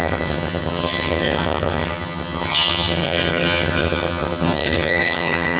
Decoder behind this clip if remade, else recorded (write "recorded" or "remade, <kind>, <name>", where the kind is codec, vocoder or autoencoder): remade, vocoder, HiFi-GAN